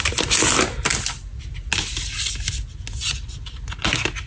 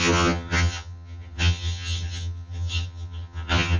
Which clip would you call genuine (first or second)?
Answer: first